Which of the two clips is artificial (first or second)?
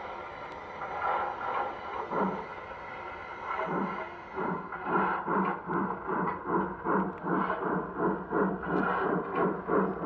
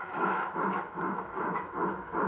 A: second